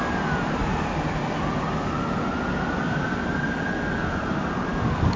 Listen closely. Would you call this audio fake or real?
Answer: real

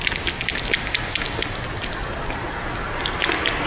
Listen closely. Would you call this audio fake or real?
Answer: real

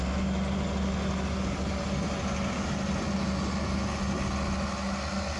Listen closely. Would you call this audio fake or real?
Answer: real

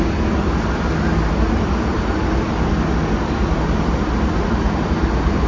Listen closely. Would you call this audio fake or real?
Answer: real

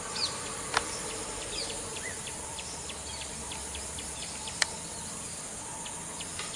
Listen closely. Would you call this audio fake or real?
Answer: real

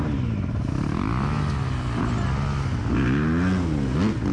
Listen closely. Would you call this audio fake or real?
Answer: real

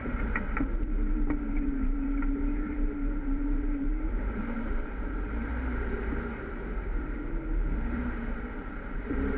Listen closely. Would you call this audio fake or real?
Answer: fake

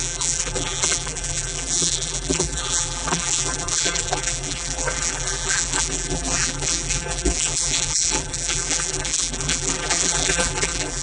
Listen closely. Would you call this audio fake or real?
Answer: fake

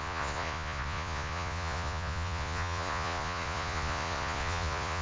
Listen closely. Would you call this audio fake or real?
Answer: fake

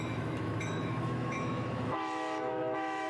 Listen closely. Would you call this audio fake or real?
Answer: fake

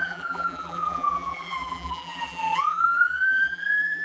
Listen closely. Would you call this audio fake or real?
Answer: fake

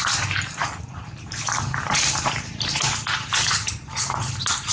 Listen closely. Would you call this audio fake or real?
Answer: real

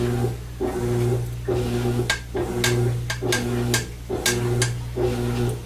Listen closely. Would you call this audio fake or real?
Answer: real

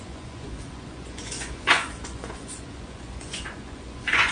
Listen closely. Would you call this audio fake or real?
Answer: fake